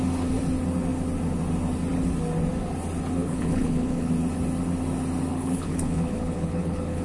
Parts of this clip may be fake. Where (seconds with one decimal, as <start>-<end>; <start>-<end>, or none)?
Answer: 3.2-4.1; 5.3-7.0